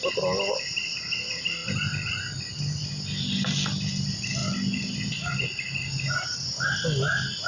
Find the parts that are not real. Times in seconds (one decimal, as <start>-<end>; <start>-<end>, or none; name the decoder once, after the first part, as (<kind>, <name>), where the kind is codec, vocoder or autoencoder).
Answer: none